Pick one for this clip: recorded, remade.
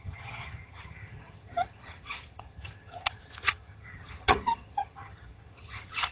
remade